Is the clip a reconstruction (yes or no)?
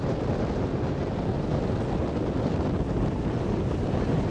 no